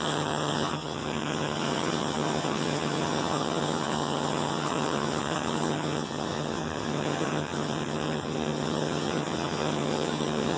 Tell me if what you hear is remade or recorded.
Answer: remade